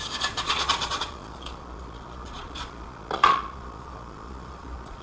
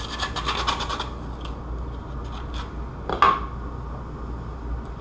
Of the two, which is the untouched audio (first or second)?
second